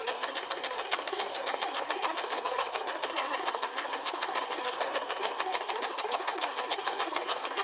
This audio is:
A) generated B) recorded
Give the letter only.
A